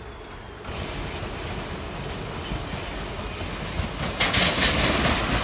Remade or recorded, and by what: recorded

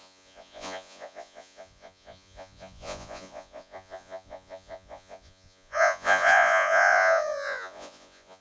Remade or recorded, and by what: remade, vocoder, Vocos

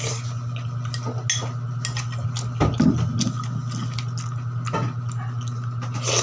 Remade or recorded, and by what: recorded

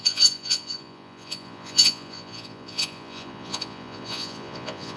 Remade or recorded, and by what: remade, vocoder, Vocos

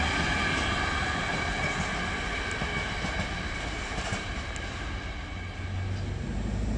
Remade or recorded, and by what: recorded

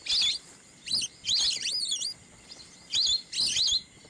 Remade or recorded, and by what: recorded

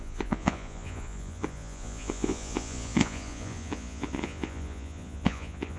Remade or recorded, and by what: remade, vocoder, Vocos